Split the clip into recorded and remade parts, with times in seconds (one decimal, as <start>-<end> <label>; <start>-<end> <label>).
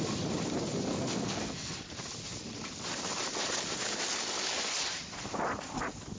0.0-0.9 recorded; 0.9-1.7 remade; 1.7-6.2 recorded